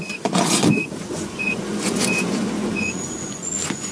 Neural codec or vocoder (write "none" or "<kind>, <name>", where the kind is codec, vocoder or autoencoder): vocoder, Vocos